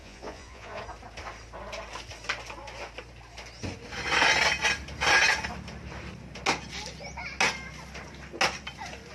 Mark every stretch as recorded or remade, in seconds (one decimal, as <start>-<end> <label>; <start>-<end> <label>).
0.0-0.8 remade; 0.8-9.1 recorded